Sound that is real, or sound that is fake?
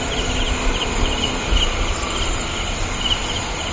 real